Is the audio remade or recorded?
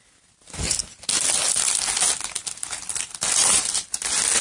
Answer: recorded